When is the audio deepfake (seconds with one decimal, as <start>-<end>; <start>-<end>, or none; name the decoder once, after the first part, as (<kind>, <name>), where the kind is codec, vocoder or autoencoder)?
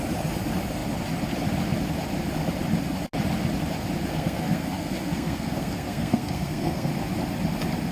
4.1-6.9 (codec, SNAC)